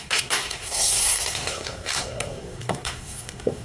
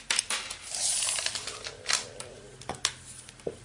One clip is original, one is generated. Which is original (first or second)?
second